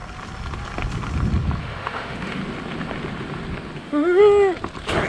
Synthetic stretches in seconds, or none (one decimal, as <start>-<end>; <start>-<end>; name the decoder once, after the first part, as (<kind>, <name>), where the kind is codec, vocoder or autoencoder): 1.6-2.4 (autoencoder, DAC-VAE); 3.8-4.2